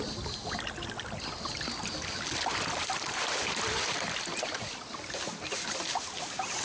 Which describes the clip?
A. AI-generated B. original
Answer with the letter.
B